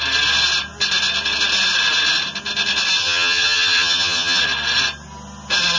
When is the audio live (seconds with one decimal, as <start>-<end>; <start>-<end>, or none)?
0.0-3.0; 4.4-5.8